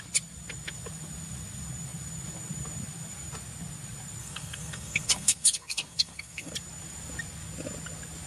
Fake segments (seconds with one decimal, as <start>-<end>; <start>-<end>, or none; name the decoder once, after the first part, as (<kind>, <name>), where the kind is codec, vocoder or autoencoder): 4.2-6.5 (codec, SNAC)